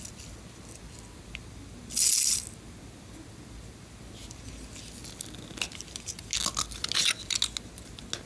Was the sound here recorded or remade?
recorded